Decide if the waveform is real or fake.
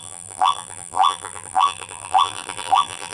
fake